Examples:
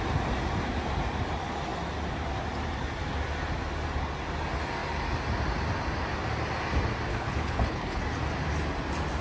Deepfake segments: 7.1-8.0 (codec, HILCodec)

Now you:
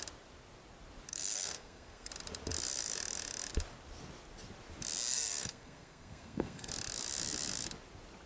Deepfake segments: 1.1-2.1 (codec, SNAC); 5.1-6.7

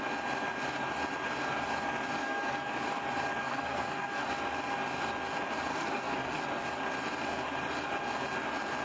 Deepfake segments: 2.2-2.7 (codec, SNAC); 3.4-4.3; 5.7-6.4

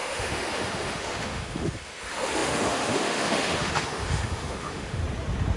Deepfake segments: 0.0-5.0 (autoencoder, DAC-VAE)

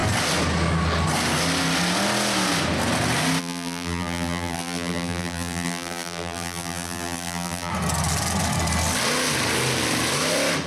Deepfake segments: 3.4-7.7 (vocoder, BigVGAN v2)